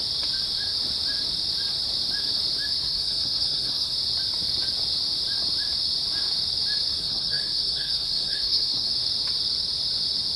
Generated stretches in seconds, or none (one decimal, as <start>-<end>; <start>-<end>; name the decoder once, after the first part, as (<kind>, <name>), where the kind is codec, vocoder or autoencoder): 2.7-3.9 (codec, SNAC); 7.0-8.9